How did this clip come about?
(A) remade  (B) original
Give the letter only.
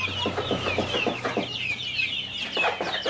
B